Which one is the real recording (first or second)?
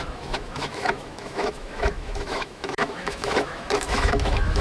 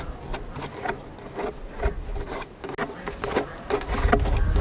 second